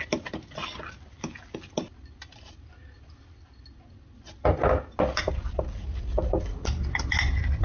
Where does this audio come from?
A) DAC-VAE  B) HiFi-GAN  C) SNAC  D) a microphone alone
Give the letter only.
D